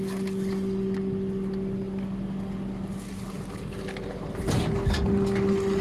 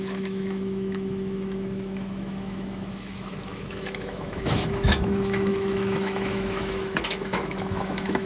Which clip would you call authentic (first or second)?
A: first